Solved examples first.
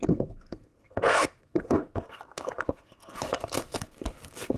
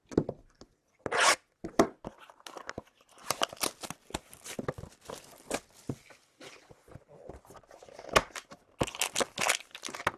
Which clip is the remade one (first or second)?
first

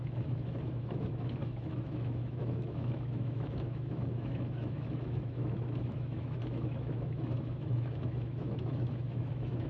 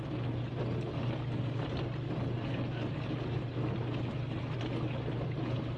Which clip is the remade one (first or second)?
first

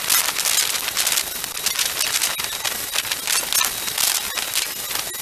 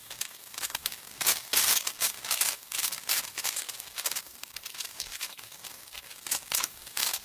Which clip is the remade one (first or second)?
second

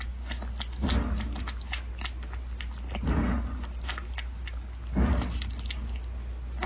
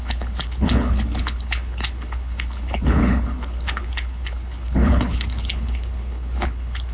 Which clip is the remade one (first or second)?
second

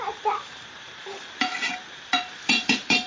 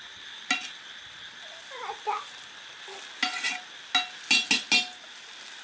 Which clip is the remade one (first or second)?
first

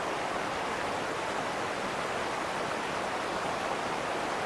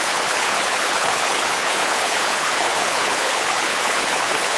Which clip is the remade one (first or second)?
second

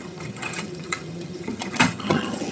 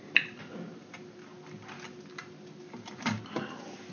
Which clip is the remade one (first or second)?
first